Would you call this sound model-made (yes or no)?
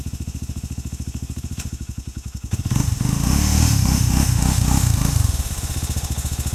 yes